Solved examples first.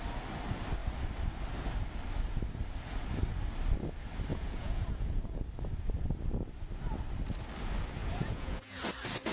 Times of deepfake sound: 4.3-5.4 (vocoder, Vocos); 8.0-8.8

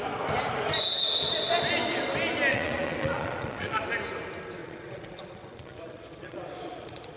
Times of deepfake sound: 2.5-3.8 (vocoder, Vocos); 4.6-7.2

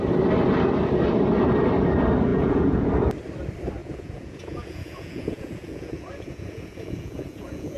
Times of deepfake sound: 2.3-2.9 (vocoder, Vocos); 3.8-7.8